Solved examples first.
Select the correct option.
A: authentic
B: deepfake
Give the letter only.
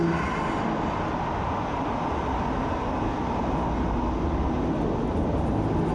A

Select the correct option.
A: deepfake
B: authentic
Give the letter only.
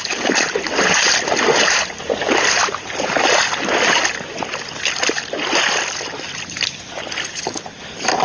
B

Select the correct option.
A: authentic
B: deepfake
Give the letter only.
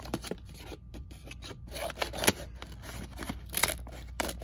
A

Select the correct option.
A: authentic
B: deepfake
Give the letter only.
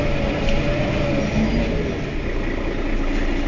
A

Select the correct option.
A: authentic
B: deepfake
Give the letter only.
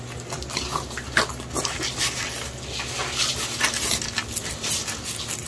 A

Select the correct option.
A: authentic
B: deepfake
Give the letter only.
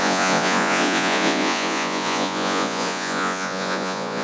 B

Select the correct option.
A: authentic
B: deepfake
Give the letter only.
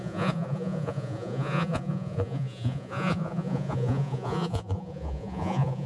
B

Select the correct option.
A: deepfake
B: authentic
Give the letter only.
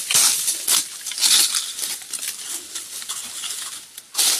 B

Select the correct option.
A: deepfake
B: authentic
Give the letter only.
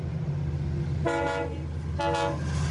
B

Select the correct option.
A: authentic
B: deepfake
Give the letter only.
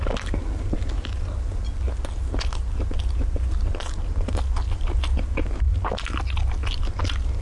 A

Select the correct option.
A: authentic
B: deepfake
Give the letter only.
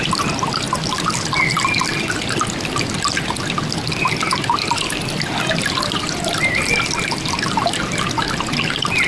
A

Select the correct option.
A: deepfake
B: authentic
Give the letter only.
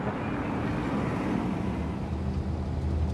B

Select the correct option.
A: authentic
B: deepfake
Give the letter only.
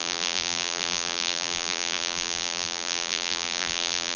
B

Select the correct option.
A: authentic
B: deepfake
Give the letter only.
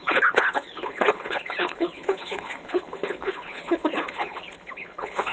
B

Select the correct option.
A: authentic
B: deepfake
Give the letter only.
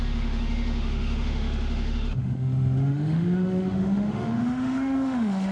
B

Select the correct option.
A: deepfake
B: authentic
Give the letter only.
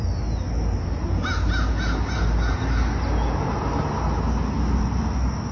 B